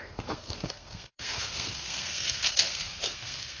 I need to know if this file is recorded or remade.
remade